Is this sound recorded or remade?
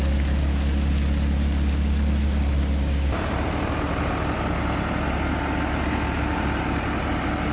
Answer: recorded